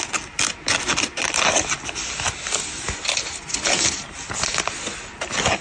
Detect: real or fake real